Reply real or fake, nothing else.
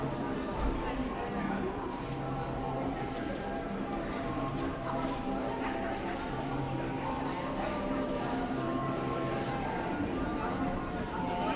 fake